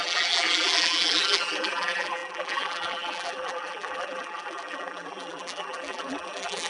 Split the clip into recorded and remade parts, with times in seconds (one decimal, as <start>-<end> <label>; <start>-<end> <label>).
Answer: 0.0-6.7 remade